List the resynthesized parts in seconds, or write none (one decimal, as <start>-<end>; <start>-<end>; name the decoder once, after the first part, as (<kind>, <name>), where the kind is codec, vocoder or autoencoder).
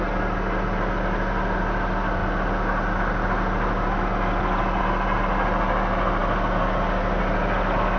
none